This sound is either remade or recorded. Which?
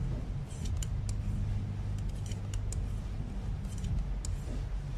recorded